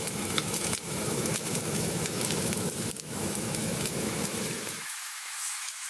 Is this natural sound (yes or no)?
no